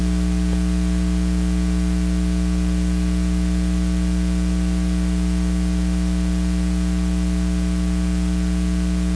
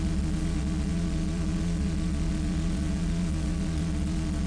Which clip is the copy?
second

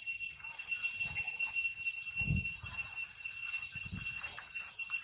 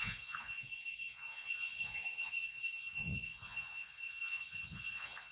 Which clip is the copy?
second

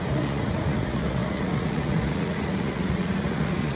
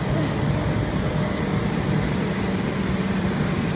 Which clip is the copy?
first